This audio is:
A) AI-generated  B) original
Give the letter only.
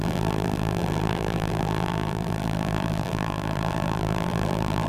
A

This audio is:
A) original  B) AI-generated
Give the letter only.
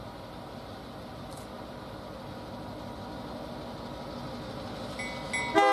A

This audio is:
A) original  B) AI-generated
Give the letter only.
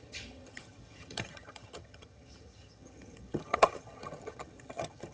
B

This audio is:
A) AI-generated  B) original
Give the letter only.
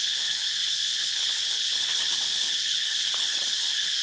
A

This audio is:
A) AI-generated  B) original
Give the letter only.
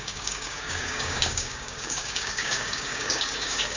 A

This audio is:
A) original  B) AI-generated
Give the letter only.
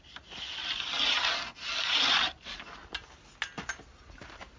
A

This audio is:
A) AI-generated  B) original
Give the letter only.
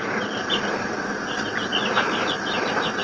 B